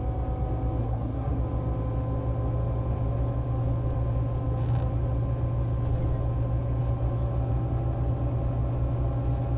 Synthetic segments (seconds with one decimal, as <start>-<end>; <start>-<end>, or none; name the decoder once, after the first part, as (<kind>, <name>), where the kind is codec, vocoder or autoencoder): 0.8-1.4 (codec, SNAC)